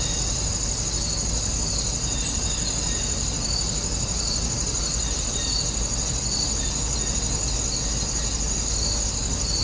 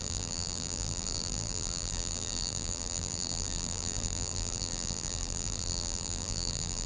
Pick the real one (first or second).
first